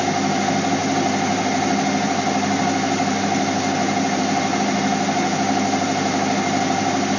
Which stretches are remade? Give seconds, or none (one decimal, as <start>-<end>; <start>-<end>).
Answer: none